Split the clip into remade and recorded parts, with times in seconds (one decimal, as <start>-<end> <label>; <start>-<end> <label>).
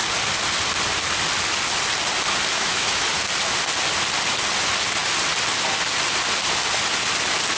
0.0-2.5 recorded; 2.5-3.1 remade; 3.1-7.6 recorded